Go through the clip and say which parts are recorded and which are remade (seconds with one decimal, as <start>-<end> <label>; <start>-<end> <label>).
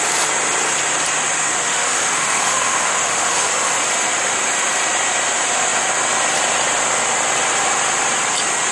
0.0-1.5 recorded; 1.5-3.5 remade; 3.5-8.7 recorded